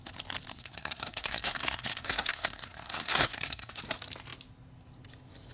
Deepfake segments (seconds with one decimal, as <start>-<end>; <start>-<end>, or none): 0.5-3.8